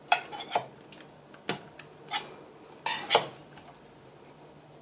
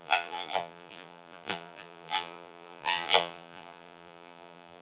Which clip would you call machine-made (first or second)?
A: second